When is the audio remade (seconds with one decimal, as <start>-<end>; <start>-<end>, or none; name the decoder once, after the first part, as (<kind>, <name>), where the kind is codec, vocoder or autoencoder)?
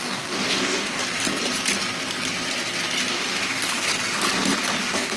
0.0-1.0 (codec, DAC); 3.1-3.9; 4.8-5.2